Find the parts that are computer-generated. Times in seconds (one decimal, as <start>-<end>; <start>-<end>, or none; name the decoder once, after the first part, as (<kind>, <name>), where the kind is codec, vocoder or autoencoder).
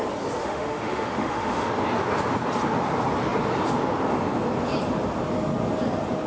0.4-1.7 (autoencoder, DAC-VAE)